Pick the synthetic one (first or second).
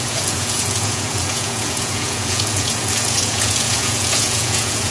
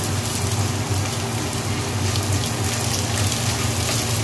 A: first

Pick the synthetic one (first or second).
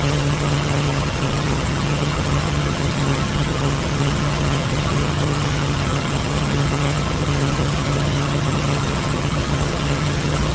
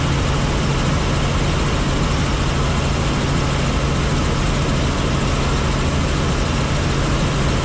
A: first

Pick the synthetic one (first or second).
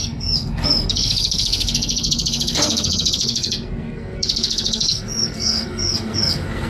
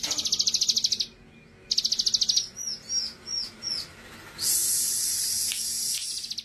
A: first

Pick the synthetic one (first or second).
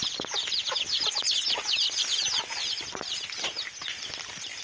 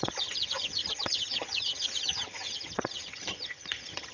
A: second